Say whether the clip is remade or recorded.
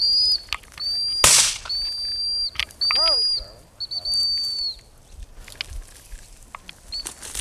recorded